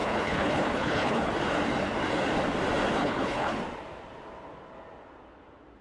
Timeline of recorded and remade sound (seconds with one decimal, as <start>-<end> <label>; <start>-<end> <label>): 0.0-1.3 remade; 1.3-3.0 recorded; 3.0-3.6 remade; 3.6-5.8 recorded